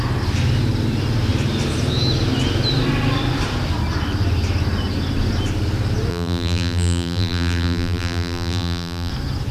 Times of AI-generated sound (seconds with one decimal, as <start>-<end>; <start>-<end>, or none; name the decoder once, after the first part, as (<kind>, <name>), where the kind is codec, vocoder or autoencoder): 6.1-9.1 (vocoder, BigVGAN v2)

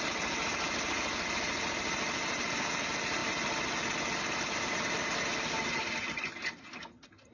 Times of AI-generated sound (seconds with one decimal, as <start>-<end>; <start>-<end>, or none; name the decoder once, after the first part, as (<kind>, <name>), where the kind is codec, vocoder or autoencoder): none